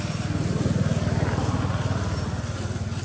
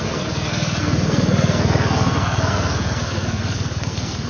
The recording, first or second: first